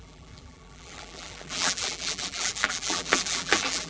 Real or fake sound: fake